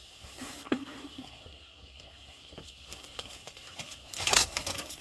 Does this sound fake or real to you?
fake